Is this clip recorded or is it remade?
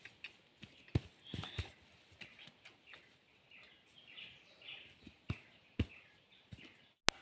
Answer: recorded